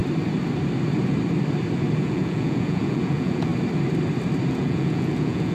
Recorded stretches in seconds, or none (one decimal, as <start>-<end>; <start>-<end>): 0.0-2.0; 3.5-4.5